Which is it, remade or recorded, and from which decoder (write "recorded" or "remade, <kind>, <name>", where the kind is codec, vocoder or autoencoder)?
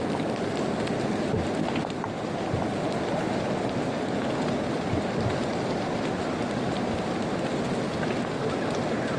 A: recorded